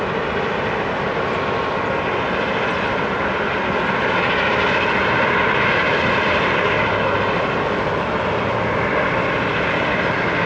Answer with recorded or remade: recorded